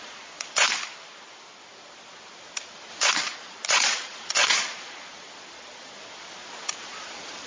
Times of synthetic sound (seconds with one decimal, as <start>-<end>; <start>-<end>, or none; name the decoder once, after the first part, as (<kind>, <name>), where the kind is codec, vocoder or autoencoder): 0.0-0.7 (vocoder, Vocos); 2.9-6.0; 6.7-7.5